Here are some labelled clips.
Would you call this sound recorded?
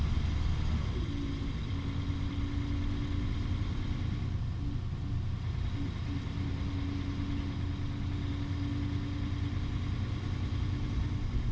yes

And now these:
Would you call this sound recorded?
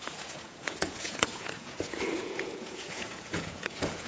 no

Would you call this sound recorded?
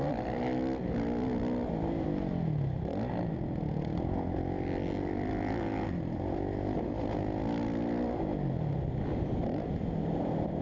yes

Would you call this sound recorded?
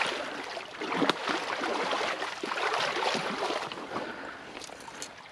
yes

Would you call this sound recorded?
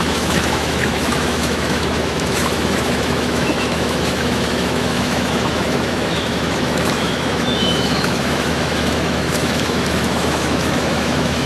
no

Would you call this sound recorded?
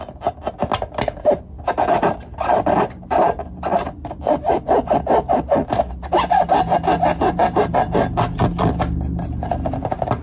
yes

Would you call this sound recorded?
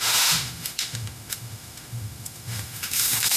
no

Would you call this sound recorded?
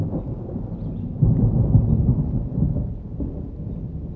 yes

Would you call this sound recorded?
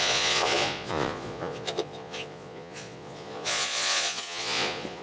no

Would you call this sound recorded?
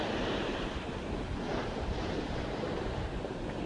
yes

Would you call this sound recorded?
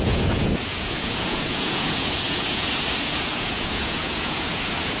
no